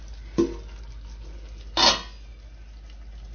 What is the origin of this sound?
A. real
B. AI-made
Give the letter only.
A